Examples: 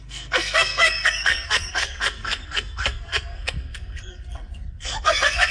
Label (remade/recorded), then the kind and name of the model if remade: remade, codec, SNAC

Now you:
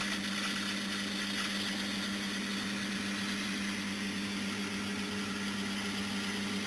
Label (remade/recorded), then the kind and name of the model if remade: recorded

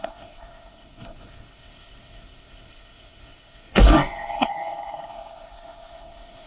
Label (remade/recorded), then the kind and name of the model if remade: remade, codec, SNAC